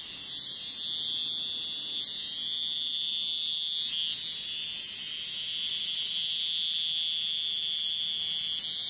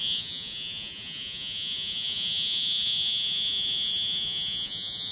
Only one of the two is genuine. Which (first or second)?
first